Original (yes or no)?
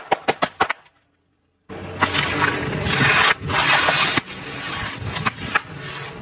yes